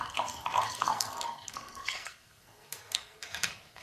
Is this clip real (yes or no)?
no